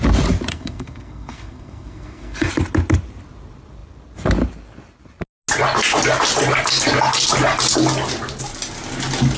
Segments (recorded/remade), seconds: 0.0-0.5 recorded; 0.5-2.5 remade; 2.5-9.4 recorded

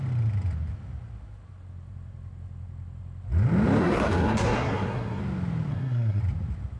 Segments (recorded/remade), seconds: 0.0-3.8 recorded; 3.8-5.2 remade; 5.2-5.7 recorded; 5.7-6.2 remade; 6.2-6.8 recorded

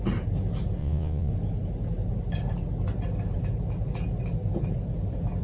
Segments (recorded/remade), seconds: 0.0-0.8 recorded; 0.8-1.3 remade; 1.3-5.4 recorded

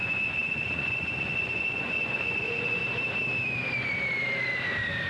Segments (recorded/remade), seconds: 0.0-2.8 remade; 2.8-5.1 recorded

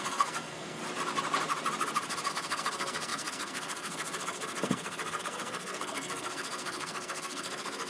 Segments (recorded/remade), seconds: 0.0-0.8 remade; 0.8-2.3 recorded; 2.3-7.9 remade

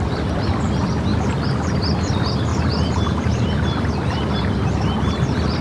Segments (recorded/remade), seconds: 0.0-1.1 recorded; 1.1-1.8 remade; 1.8-2.5 recorded; 2.5-4.4 remade; 4.4-5.6 recorded

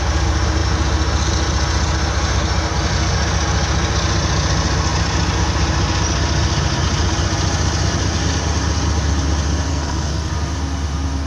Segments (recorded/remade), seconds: 0.0-9.7 recorded; 9.7-10.3 remade; 10.3-11.3 recorded